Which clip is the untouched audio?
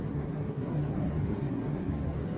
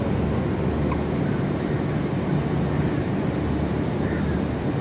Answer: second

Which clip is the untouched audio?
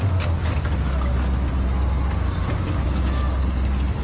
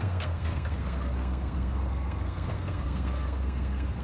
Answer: first